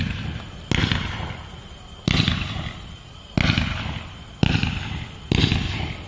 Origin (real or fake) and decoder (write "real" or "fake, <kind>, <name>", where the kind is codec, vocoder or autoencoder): real